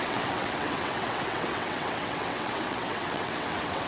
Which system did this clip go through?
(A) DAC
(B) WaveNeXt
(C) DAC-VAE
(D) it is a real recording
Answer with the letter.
B